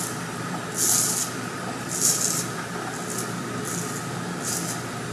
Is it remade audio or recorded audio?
recorded